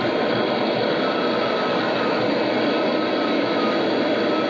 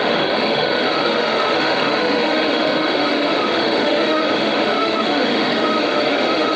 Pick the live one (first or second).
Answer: first